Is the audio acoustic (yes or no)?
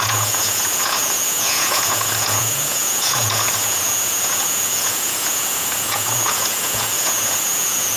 no